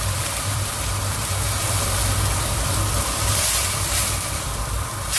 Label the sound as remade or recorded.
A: remade